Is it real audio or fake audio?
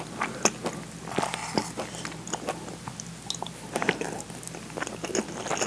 real